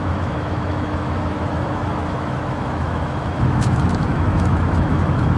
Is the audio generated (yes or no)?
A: yes